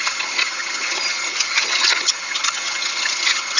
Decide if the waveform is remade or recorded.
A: remade